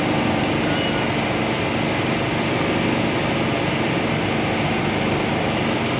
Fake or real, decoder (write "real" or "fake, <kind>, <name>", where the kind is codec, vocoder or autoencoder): real